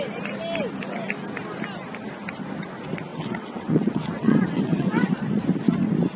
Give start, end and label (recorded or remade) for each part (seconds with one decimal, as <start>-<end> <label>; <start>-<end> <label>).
0.0-3.1 recorded; 3.1-5.1 remade; 5.1-6.2 recorded